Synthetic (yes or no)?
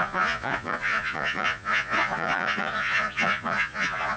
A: yes